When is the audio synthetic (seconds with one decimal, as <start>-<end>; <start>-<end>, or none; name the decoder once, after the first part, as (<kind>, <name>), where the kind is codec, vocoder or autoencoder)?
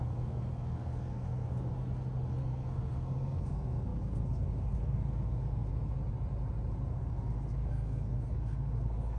0.0-1.7 (codec, SNAC); 2.3-5.7; 6.9-9.2